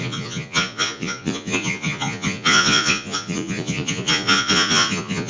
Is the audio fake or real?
fake